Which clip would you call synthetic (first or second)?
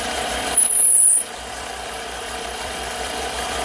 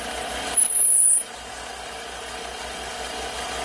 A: first